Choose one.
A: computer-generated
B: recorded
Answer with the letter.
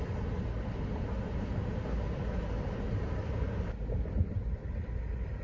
B